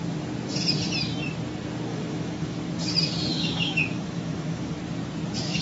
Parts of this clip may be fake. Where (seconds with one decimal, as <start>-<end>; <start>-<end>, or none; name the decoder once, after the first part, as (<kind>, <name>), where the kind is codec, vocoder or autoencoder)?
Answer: 1.9-2.6 (autoencoder, DAC-VAE); 3.3-4.8